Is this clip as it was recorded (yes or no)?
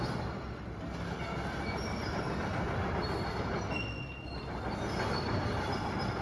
yes